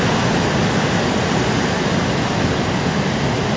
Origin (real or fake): real